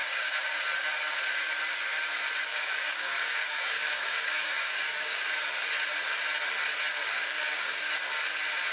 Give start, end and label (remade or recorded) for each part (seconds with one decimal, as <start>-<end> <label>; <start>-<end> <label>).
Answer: 0.0-0.6 remade; 0.6-2.5 recorded; 2.5-5.2 remade; 5.2-7.0 recorded; 7.0-7.9 remade; 7.9-8.7 recorded